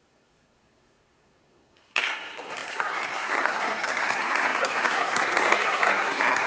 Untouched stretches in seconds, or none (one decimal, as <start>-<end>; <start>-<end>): none